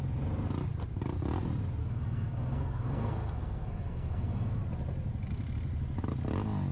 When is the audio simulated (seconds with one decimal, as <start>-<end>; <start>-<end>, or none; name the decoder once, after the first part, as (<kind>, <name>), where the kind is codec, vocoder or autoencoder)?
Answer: 1.8-4.6 (codec, SNAC)